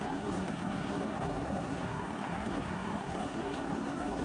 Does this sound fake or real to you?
fake